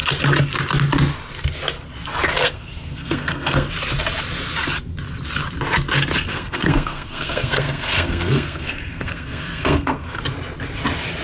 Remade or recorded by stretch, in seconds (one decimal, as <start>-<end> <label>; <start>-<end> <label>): 0.0-2.4 recorded; 2.4-3.7 remade; 3.7-6.3 recorded; 6.3-10.2 remade; 10.2-11.2 recorded